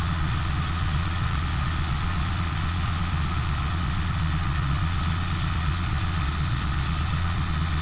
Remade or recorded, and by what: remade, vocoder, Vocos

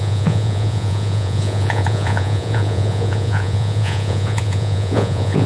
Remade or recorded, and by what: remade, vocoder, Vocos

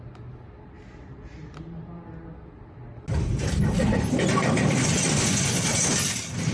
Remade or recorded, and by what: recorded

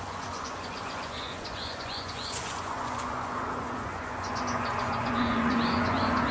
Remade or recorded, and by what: remade, vocoder, Vocos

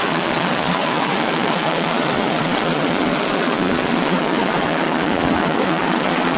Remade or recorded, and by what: remade, vocoder, Vocos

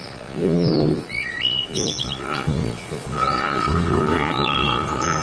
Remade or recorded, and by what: remade, vocoder, Vocos